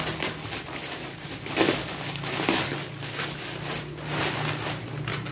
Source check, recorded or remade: recorded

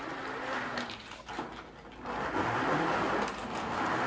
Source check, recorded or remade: recorded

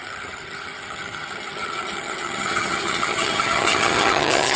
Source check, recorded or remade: remade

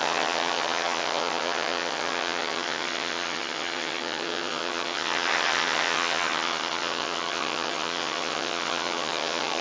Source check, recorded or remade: remade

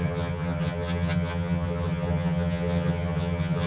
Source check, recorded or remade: remade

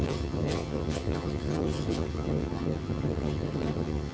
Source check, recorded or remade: remade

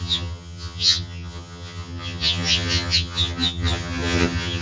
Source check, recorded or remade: remade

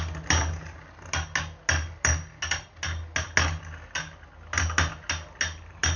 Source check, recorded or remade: recorded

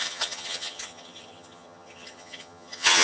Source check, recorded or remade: remade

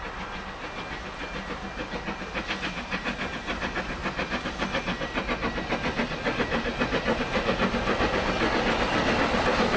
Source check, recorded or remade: recorded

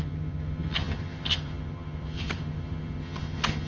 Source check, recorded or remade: remade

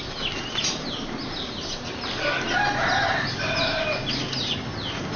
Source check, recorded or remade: recorded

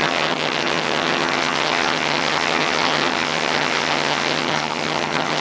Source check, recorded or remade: remade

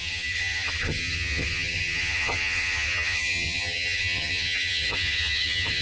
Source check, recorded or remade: remade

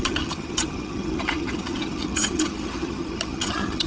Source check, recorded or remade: remade